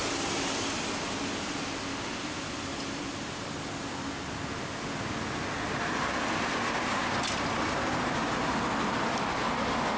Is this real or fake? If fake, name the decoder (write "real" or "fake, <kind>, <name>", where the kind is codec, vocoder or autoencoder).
real